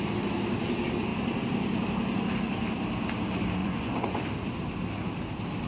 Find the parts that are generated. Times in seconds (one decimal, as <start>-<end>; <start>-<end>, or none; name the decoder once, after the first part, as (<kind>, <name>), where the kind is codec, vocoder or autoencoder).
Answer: 3.6-4.2 (vocoder, Vocos)